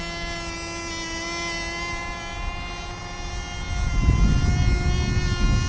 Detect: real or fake real